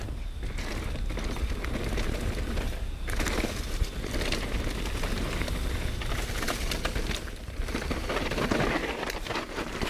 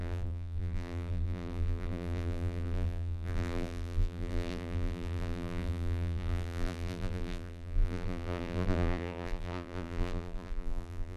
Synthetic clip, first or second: second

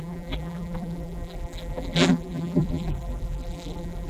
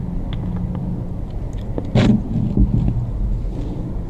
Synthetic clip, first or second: first